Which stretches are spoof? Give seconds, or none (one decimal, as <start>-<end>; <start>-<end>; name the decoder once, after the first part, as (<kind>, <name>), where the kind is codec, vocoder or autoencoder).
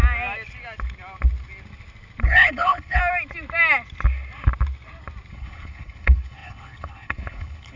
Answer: 2.2-3.0 (codec, HILCodec); 5.3-7.8